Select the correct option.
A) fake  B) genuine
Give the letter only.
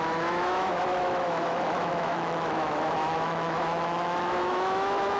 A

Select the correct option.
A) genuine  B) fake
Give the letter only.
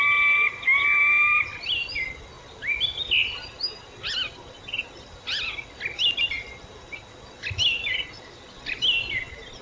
A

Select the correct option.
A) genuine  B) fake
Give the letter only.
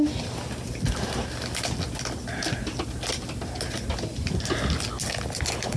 A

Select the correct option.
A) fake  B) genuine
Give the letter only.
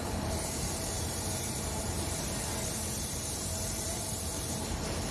A